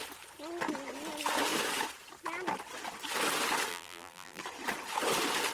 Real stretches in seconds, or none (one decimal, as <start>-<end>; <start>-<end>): 0.0-3.7; 4.4-5.5